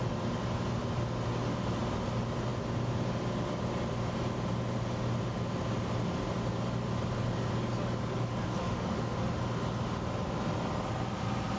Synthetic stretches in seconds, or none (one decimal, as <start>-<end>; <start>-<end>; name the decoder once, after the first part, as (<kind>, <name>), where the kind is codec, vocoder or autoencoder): 8.6-9.3 (autoencoder, DAC-VAE)